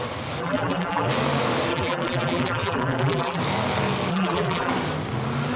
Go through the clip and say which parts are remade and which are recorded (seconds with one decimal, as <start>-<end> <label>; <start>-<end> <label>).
0.0-0.4 recorded; 0.4-1.1 remade; 1.1-1.7 recorded; 1.7-3.4 remade; 3.4-4.1 recorded; 4.1-4.7 remade; 4.7-5.6 recorded